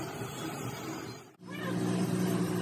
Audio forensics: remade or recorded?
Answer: recorded